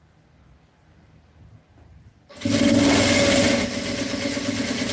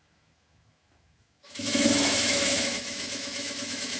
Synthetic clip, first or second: second